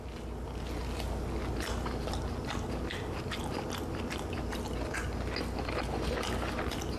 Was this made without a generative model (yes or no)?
yes